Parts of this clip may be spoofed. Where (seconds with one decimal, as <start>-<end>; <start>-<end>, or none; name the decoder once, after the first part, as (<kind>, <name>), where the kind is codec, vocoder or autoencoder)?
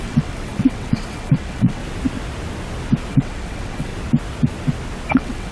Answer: 0.0-1.8 (vocoder, WaveNeXt); 3.1-3.9; 5.1-5.5